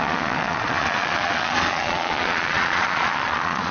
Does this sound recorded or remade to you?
remade